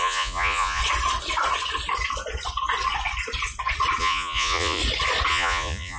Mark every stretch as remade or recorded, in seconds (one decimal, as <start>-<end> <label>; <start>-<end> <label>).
0.0-0.8 remade; 0.8-4.0 recorded; 4.0-4.8 remade; 4.8-5.3 recorded; 5.3-6.0 remade